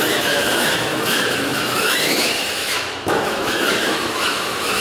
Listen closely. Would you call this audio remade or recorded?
remade